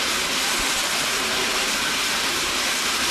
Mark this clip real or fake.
real